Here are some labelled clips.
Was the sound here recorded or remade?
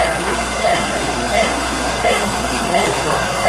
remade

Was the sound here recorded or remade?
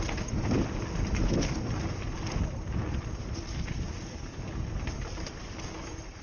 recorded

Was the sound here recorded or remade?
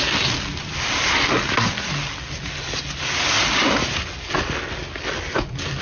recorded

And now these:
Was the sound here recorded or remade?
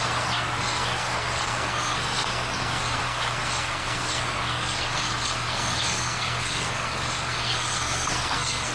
remade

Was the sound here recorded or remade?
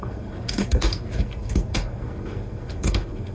remade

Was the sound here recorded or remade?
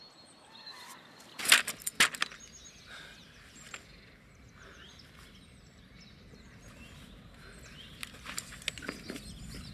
recorded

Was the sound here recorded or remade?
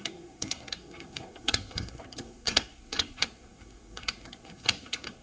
remade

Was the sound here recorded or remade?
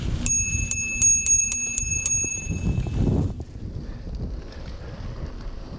recorded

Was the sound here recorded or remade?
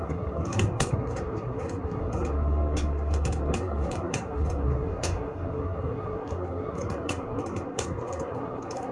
remade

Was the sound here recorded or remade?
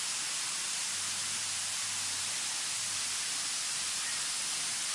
recorded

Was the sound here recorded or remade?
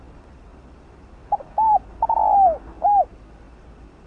recorded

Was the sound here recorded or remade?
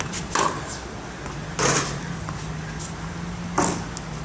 recorded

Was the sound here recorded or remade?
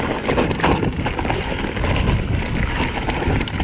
recorded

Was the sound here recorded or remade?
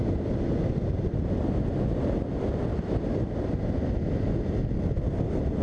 recorded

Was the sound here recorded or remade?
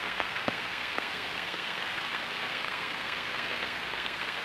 remade